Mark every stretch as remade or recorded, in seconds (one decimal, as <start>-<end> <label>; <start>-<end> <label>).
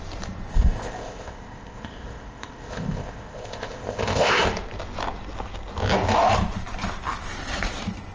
0.0-0.5 recorded; 0.5-4.4 remade; 4.4-8.1 recorded